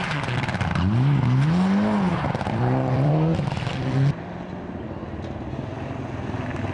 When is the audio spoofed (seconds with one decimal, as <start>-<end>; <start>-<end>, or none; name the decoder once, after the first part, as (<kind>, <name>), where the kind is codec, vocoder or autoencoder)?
2.1-3.1 (vocoder, BigVGAN v2)